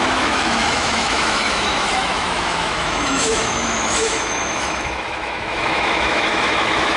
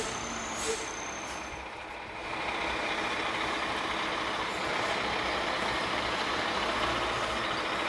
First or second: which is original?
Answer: second